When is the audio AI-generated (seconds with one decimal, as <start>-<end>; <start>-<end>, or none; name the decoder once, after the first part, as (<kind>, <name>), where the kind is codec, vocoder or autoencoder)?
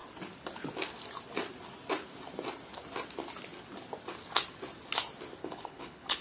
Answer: 5.4-6.2 (codec, HILCodec)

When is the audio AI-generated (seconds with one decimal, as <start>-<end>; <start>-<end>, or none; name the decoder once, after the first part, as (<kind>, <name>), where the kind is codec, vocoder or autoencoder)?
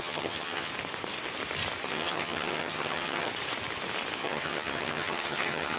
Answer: 0.0-0.7 (vocoder, HiFi-GAN); 1.9-3.3; 4.2-5.8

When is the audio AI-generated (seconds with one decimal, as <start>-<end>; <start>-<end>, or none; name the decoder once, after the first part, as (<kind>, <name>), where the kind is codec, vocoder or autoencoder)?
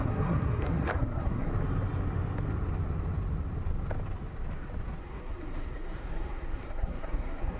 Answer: 0.0-1.5 (codec, SNAC); 5.0-7.6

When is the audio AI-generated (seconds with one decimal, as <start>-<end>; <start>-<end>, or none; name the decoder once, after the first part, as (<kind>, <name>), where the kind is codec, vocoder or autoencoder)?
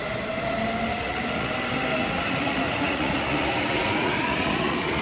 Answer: 0.9-1.5 (vocoder, Vocos); 1.9-5.0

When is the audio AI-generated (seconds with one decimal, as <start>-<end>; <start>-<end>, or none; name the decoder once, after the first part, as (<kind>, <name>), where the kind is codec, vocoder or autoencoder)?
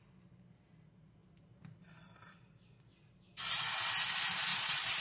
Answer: 4.5-5.0 (vocoder, BigVGAN v2)